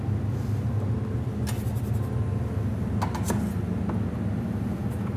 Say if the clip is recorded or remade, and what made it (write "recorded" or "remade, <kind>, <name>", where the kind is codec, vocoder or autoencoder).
recorded